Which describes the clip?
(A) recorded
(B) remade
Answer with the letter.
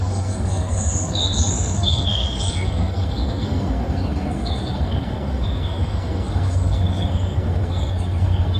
B